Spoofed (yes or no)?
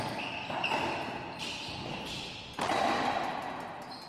no